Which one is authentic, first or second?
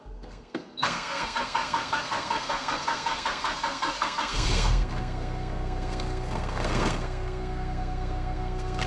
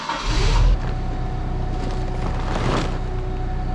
second